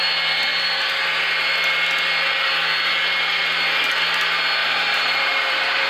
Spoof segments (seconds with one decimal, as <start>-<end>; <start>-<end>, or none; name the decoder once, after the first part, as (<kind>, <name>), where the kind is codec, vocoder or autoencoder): 4.6-5.9 (vocoder, BigVGAN v2)